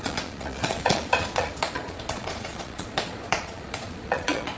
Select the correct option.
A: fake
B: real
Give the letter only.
A